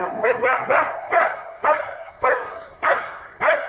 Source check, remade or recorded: remade